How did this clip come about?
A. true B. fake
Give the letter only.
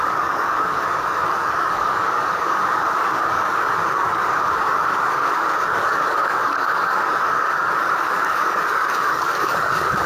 B